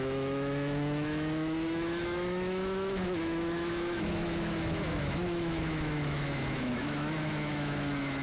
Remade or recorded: remade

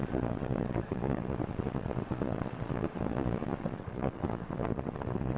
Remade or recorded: remade